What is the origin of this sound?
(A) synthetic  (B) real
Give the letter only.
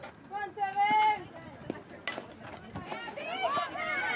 B